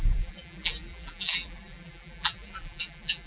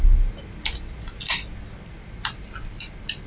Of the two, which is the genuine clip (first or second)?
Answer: second